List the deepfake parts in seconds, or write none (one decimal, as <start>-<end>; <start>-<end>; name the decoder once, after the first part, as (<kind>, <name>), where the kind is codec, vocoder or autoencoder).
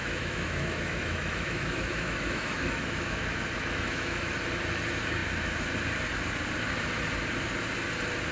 0.0-4.3 (autoencoder, DAC-VAE)